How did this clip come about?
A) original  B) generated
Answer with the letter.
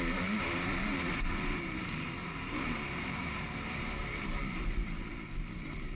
B